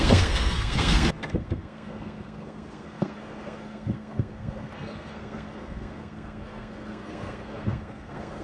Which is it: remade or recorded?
remade